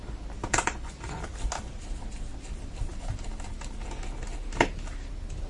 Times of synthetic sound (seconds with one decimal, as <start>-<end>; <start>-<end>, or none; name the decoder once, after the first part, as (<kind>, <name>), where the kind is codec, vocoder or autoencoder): 0.5-1.2 (vocoder, Vocos)